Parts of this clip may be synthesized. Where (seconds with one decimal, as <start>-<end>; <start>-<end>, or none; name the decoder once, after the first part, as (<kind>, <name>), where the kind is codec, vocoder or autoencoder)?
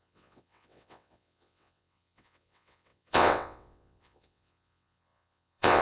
0.0-5.8 (vocoder, WaveNeXt)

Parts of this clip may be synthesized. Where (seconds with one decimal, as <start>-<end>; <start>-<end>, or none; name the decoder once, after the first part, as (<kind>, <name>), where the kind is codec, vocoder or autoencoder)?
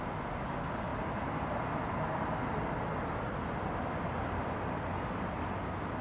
none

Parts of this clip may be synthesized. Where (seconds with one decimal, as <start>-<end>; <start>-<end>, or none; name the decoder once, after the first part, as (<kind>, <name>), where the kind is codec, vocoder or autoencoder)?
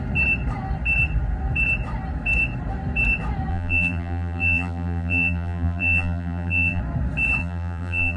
3.5-6.8 (vocoder, BigVGAN v2); 7.4-8.2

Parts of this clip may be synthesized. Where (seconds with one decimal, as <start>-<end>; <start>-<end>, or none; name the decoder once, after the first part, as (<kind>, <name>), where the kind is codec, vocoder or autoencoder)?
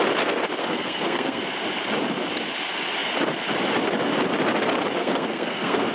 0.6-1.4 (codec, SNAC); 5.0-5.9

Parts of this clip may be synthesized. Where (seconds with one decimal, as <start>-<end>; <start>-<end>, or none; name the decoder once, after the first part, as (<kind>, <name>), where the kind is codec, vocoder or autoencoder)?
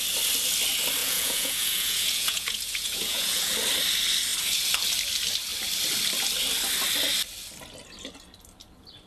1.0-3.5 (vocoder, Vocos)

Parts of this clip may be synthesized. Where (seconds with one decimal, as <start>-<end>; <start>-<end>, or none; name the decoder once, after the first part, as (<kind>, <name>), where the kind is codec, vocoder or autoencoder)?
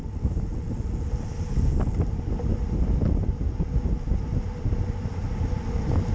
none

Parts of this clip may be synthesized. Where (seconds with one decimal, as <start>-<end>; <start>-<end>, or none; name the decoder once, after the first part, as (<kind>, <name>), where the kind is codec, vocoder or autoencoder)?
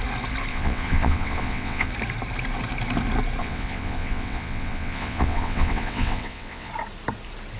0.5-1.9 (vocoder, WaveNeXt); 3.4-6.7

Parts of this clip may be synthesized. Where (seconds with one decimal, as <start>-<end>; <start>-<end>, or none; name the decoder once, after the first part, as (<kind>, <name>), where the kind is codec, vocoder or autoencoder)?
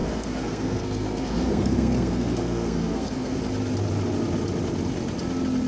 0.0-3.4 (codec, SNAC)